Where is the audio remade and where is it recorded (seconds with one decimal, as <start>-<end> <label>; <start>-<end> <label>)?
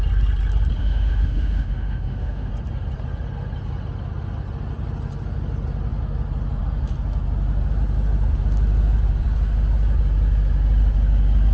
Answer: 0.0-0.8 recorded; 0.8-2.5 remade; 2.5-11.5 recorded